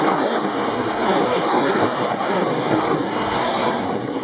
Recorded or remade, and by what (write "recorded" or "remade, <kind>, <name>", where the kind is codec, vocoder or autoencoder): remade, codec, SNAC